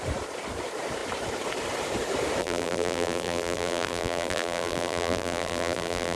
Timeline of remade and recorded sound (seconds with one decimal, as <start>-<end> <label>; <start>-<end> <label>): 0.0-2.4 recorded; 2.4-6.2 remade